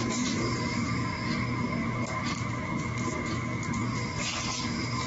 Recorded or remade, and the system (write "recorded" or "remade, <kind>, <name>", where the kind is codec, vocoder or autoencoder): recorded